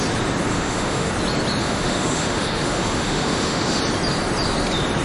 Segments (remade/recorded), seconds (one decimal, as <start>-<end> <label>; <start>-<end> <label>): 0.0-0.5 recorded; 0.5-1.1 remade; 1.1-1.6 recorded; 1.6-3.8 remade; 3.8-5.0 recorded

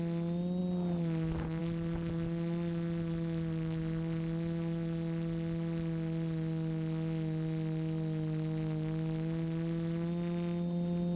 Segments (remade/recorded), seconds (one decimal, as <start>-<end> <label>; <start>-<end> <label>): 0.0-11.2 recorded

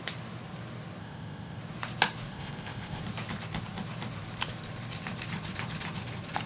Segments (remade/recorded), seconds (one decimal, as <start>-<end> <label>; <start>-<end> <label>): 0.0-1.0 recorded; 1.0-1.6 remade; 1.6-2.3 recorded; 2.3-3.0 remade; 3.0-6.5 recorded

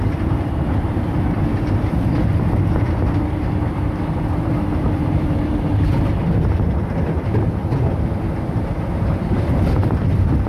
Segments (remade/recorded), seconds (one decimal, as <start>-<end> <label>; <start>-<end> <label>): 0.0-7.6 remade; 7.6-8.8 recorded; 8.8-10.5 remade

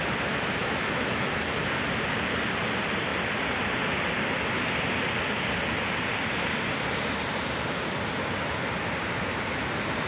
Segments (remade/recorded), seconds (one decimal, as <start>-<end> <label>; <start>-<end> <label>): 0.0-0.6 recorded; 0.6-1.4 remade; 1.4-10.1 recorded

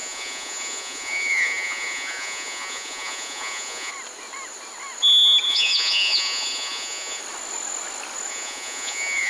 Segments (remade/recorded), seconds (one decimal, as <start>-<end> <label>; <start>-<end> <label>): 0.0-3.9 remade; 3.9-5.5 recorded; 5.5-7.2 remade; 7.2-8.3 recorded; 8.3-9.3 remade

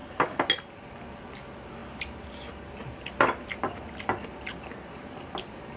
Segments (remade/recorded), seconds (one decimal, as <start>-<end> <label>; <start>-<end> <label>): 0.0-5.8 recorded